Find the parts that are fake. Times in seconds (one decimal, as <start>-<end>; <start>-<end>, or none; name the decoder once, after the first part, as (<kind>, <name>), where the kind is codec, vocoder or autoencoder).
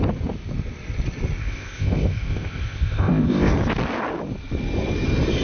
1.4-3.5 (codec, ZipCodec)